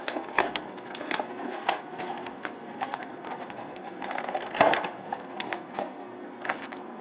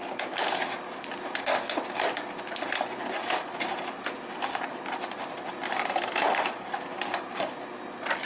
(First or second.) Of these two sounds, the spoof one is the first